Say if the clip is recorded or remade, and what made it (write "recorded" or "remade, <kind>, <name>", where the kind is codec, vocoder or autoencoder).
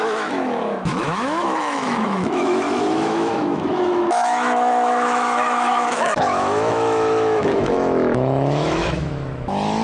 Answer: remade, autoencoder, DAC-VAE